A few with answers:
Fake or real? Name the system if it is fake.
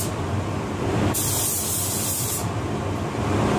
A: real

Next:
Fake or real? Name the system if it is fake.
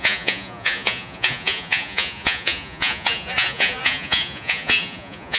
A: fake, vocoder, Vocos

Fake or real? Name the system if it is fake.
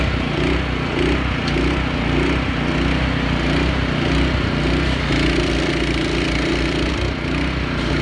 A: real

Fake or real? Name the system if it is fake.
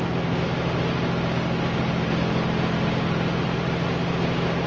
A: real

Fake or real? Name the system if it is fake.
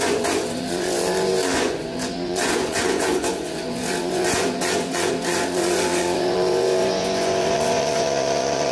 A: fake, vocoder, Vocos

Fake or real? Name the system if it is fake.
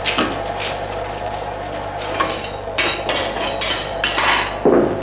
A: real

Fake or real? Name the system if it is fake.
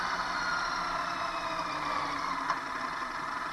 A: real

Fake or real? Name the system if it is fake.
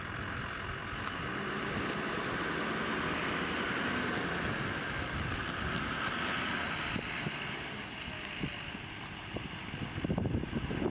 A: real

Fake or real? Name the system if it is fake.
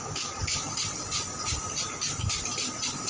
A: real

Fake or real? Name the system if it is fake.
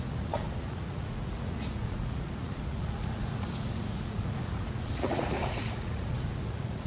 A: fake, vocoder, Vocos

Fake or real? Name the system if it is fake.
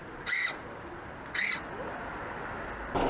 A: real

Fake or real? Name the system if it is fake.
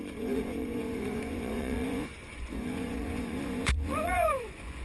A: fake, vocoder, Vocos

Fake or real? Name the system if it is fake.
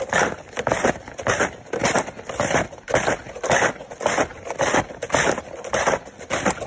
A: real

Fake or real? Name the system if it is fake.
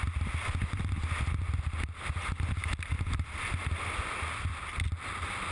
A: real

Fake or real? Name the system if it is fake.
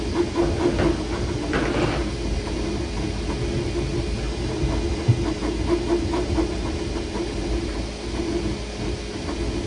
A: real